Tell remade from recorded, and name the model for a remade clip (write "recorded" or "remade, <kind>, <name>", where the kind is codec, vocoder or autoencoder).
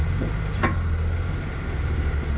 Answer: recorded